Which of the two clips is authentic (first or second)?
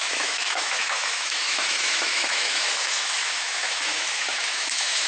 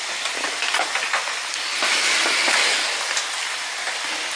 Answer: second